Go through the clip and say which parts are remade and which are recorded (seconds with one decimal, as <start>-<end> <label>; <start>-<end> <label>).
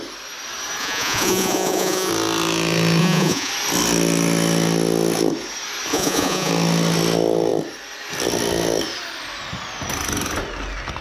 0.0-0.8 recorded; 0.8-2.1 remade; 2.1-3.0 recorded; 3.0-3.5 remade; 3.5-5.9 recorded; 5.9-6.5 remade; 6.5-11.0 recorded